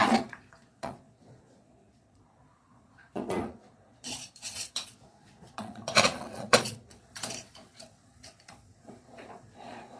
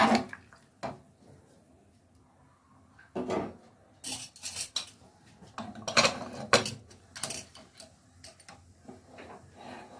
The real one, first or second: second